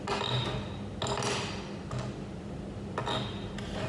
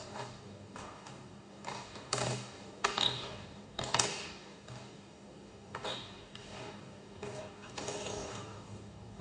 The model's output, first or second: second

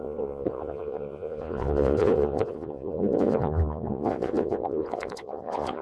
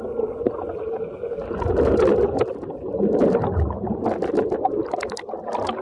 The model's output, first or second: first